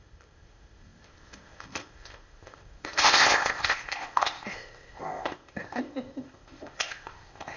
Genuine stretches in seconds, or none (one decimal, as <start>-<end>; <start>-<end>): none